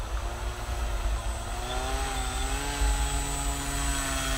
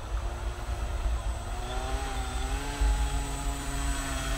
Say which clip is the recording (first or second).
first